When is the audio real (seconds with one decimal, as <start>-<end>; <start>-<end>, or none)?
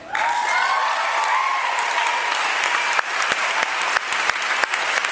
0.0-5.1